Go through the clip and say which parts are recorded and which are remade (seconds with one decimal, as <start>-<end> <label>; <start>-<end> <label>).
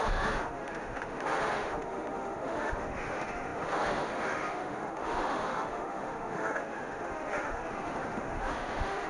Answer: 0.0-9.1 remade